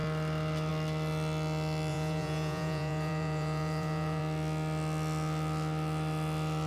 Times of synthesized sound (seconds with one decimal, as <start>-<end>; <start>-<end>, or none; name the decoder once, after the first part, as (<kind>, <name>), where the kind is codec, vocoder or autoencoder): 1.9-4.2 (vocoder, Vocos)